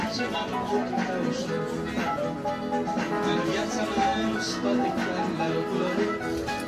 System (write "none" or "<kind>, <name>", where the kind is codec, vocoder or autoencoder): none